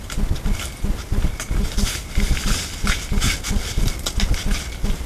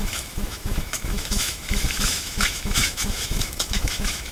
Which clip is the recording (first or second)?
first